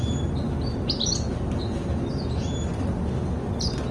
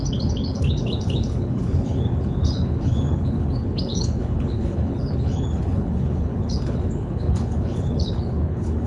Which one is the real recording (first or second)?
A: first